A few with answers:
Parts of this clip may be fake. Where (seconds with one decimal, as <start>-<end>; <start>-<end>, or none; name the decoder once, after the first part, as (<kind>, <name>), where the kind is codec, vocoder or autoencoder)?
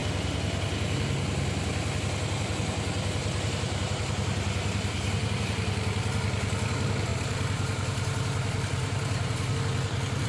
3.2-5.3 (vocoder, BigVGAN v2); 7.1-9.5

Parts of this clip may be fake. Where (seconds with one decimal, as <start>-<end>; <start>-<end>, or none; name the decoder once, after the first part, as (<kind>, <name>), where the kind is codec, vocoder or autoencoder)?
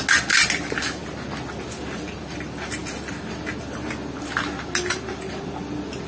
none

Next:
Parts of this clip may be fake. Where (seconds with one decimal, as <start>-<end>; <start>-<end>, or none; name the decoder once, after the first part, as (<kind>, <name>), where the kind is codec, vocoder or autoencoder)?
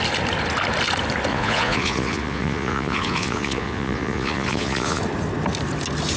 1.3-5.0 (vocoder, Vocos)